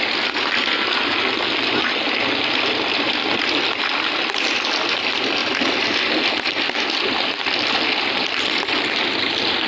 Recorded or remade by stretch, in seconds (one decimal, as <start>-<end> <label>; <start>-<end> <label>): 0.0-9.7 recorded